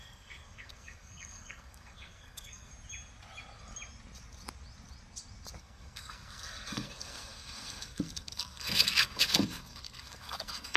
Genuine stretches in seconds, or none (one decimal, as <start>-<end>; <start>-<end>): 2.7-5.6